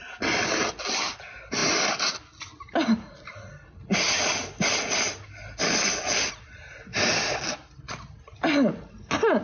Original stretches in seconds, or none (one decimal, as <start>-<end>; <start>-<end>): 0.0-9.4